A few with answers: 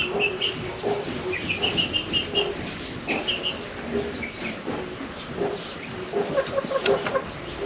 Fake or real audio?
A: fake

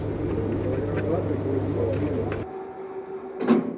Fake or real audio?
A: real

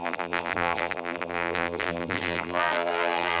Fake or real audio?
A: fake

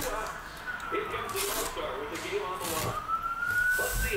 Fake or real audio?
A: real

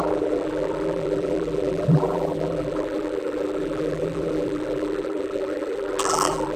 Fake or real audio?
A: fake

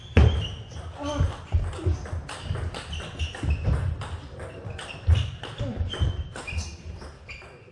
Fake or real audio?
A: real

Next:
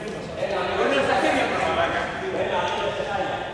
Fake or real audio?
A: fake